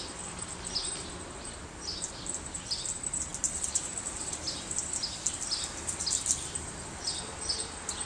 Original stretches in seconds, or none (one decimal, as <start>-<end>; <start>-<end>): 0.0-8.1